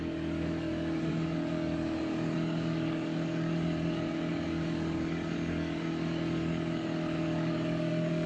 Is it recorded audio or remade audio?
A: remade